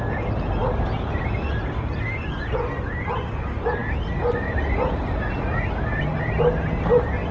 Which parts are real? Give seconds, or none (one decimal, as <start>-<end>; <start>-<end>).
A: 0.0-7.3